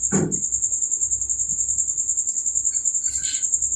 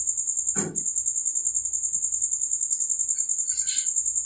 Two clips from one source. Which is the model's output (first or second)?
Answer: first